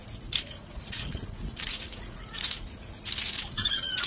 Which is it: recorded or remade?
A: remade